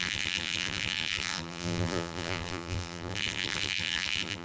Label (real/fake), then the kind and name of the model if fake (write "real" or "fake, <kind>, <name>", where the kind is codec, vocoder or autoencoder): fake, vocoder, BigVGAN v2